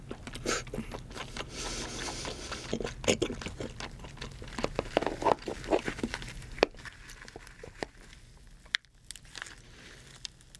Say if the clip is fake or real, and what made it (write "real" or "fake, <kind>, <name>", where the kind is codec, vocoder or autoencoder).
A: real